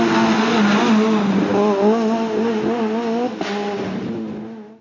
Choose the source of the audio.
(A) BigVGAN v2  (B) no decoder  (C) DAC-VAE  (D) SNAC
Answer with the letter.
B